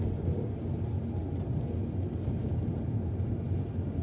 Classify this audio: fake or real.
real